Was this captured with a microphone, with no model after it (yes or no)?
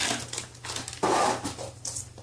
yes